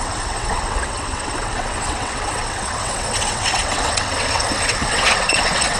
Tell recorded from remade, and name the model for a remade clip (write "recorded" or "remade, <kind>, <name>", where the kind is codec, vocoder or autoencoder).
remade, vocoder, WaveNeXt